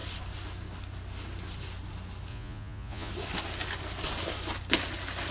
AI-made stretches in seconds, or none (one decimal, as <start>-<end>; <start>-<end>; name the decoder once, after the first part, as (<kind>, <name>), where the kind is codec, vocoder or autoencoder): 2.3-3.1 (vocoder, Vocos)